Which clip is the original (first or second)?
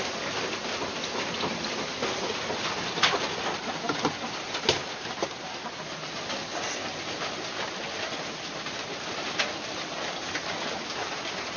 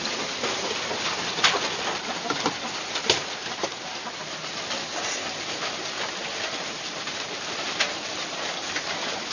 first